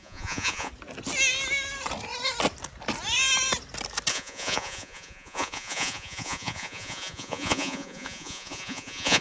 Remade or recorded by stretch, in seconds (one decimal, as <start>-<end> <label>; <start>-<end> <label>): 0.0-0.7 remade; 0.7-4.1 recorded; 4.1-9.2 remade